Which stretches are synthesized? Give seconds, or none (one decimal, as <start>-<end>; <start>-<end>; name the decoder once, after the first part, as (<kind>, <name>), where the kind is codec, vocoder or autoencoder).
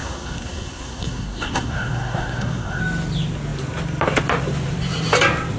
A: 0.0-2.8 (codec, SNAC)